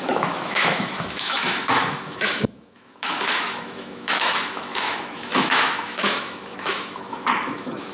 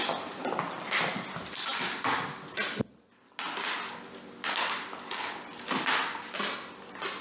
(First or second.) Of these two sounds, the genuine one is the second